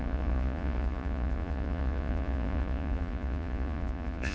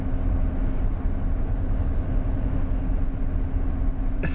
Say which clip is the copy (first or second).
first